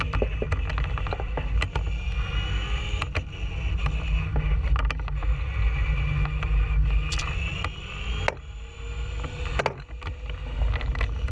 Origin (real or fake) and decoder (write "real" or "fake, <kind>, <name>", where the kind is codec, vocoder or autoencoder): real